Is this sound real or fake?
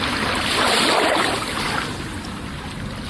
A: real